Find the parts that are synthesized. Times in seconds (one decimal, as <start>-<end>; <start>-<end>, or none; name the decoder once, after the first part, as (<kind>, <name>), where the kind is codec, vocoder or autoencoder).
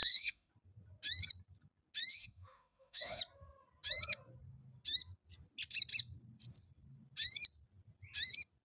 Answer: 0.0-0.5 (autoencoder, DAC-VAE); 2.1-3.2